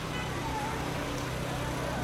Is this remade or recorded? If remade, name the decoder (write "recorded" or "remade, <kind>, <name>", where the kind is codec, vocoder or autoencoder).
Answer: recorded